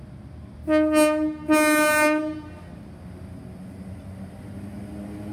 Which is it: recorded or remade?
recorded